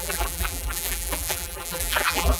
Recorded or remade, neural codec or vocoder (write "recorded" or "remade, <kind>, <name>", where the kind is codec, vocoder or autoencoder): remade, vocoder, BigVGAN v2